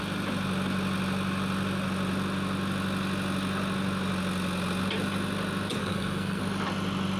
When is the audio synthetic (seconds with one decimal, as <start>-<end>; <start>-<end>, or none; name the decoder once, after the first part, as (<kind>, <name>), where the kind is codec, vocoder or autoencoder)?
5.8-6.4 (codec, SNAC)